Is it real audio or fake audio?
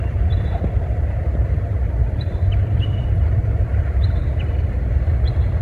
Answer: fake